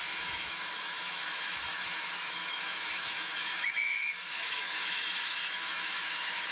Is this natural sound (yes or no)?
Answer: no